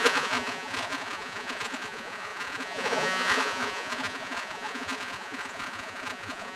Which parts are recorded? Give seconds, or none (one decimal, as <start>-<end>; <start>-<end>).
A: none